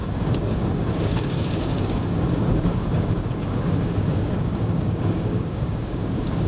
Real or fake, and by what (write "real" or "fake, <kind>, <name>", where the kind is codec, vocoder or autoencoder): fake, codec, DAC